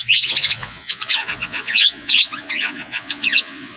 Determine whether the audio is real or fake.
fake